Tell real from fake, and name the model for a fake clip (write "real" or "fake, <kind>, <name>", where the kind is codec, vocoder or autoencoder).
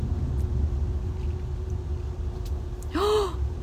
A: real